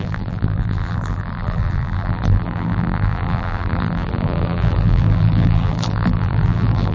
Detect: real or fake fake